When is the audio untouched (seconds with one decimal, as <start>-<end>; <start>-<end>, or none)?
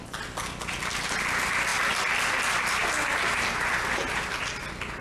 0.0-5.0